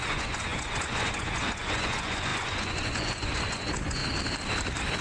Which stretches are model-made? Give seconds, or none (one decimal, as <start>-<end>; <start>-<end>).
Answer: 0.0-4.0